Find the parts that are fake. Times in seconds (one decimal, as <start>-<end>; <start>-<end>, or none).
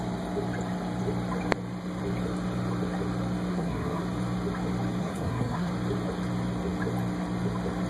3.5-4.0; 5.0-5.7